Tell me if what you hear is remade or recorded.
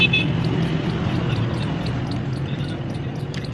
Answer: recorded